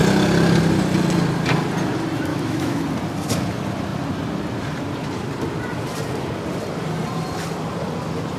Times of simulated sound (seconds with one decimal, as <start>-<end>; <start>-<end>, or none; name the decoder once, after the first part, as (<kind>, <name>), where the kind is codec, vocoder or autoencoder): 2.3-2.8 (autoencoder, DAC-VAE)